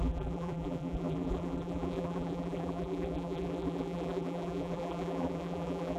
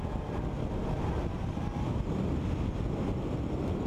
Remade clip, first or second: first